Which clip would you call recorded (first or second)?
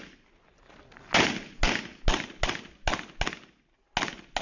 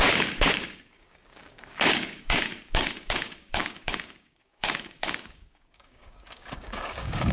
first